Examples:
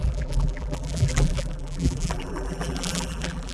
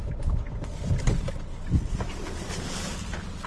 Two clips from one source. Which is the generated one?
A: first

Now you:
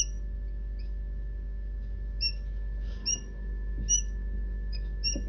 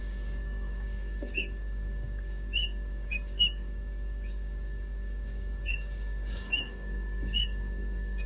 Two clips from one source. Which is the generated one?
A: second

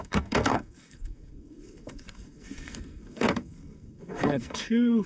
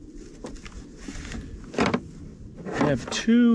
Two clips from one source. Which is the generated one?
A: first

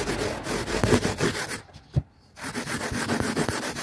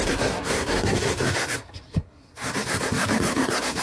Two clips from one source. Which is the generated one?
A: second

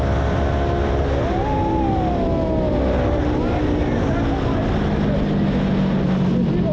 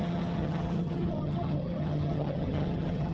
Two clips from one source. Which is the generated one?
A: second